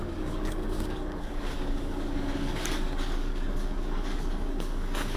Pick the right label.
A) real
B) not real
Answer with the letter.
B